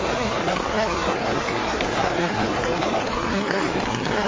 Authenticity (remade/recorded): remade